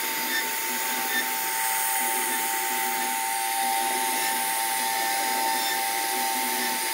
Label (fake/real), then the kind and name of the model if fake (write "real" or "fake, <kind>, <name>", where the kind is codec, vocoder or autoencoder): real